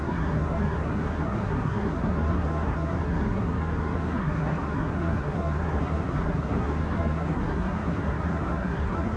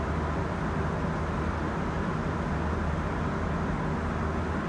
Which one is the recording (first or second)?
second